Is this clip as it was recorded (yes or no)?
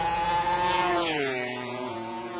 no